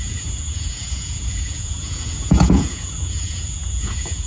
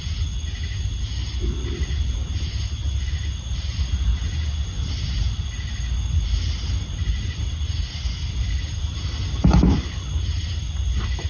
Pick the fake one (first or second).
first